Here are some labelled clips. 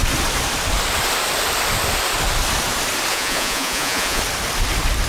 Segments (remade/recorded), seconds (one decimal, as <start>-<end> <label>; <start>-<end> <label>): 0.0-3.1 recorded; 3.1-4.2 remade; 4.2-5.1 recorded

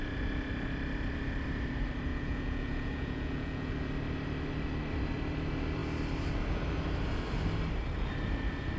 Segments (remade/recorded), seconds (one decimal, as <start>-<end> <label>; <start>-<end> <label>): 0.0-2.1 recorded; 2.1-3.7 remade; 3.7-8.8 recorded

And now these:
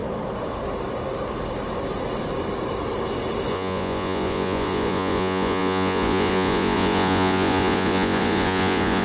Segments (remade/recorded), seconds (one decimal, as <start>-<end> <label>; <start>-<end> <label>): 0.0-3.5 recorded; 3.5-9.0 remade

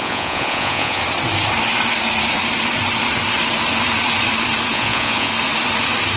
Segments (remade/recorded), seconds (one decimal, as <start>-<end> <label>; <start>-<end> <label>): 0.0-1.0 remade; 1.0-4.7 recorded; 4.7-5.3 remade; 5.3-6.2 recorded

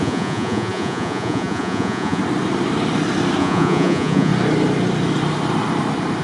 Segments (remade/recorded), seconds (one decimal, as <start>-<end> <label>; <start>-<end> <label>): 0.0-2.2 remade; 2.2-3.4 recorded; 3.4-4.3 remade; 4.3-6.2 recorded

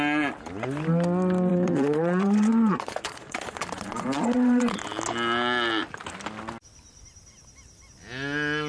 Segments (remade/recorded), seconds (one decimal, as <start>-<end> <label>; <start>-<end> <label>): 0.0-1.5 recorded; 1.5-4.8 remade; 4.8-8.7 recorded

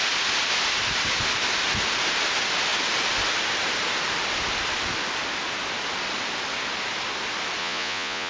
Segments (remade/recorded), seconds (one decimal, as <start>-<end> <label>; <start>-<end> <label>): 0.0-7.6 recorded; 7.6-8.3 remade

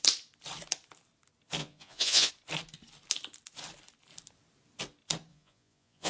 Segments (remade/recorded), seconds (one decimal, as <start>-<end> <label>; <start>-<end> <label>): 0.0-1.6 recorded; 1.6-2.3 remade; 2.3-5.3 recorded; 5.3-6.1 remade